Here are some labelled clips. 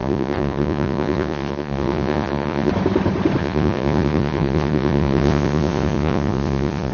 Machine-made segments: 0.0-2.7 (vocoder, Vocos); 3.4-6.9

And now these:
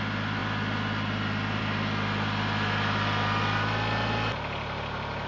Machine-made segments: none